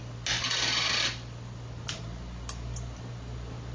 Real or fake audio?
real